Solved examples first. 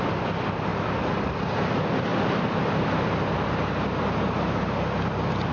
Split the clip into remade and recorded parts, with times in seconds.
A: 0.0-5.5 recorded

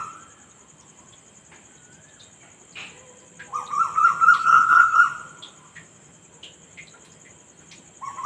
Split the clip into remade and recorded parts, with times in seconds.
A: 0.0-4.4 recorded; 4.4-5.0 remade; 5.0-8.3 recorded

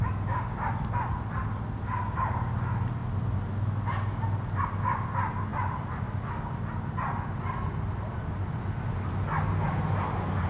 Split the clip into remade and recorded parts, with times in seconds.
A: 0.0-5.5 recorded; 5.5-6.0 remade; 6.0-10.5 recorded